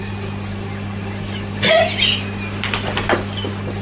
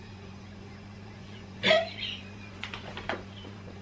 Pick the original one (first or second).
first